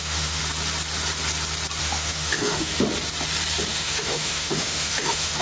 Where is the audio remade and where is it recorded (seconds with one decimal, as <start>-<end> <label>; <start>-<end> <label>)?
0.0-0.4 remade; 0.4-1.8 recorded; 1.8-2.7 remade; 2.7-3.7 recorded; 3.7-5.4 remade